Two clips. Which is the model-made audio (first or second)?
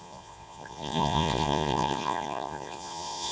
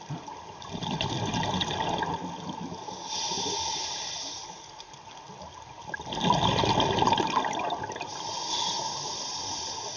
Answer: first